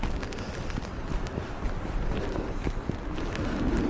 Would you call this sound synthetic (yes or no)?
no